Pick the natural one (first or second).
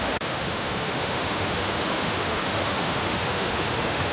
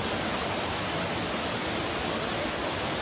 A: second